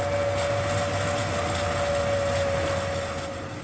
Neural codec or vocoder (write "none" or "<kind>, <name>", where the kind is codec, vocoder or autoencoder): none